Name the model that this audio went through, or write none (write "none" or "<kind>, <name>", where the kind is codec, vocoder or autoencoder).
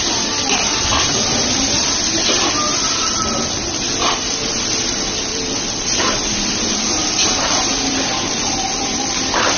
vocoder, BigVGAN v2